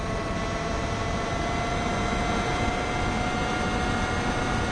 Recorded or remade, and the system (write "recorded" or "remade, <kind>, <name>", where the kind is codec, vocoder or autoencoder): recorded